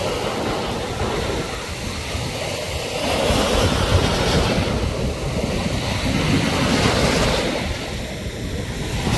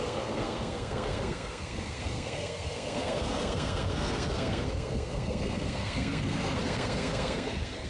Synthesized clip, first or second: second